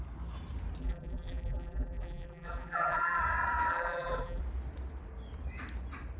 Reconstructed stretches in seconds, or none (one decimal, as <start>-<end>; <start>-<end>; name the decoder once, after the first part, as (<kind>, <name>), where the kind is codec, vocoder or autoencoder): 0.8-3.2 (vocoder, BigVGAN v2); 3.7-4.4